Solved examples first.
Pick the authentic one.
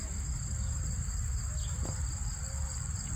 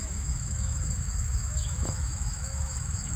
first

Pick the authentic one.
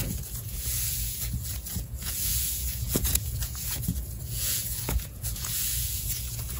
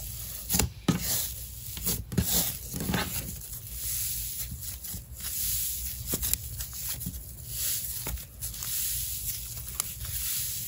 second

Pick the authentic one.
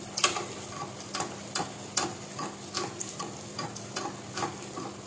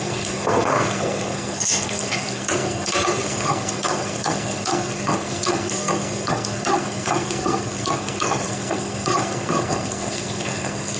first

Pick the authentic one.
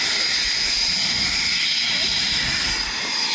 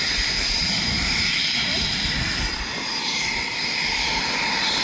first